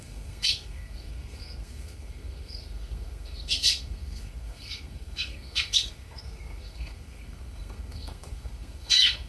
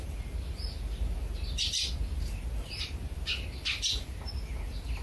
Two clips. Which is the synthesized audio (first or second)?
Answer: first